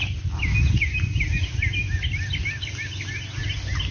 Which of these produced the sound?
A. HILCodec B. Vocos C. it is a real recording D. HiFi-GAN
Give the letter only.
C